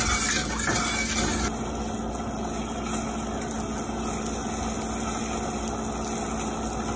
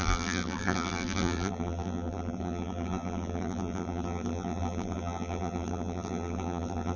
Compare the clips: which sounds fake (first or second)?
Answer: second